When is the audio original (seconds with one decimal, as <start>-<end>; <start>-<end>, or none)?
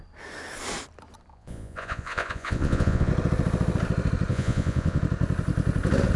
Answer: 0.0-1.3; 3.1-4.3; 5.0-6.2